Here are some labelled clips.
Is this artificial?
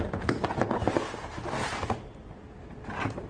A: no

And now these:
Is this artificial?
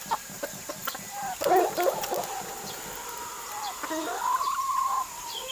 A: no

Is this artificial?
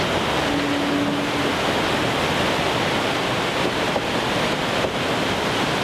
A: no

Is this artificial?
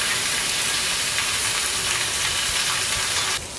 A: no